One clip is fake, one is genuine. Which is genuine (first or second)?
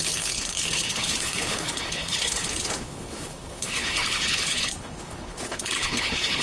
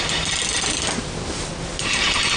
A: second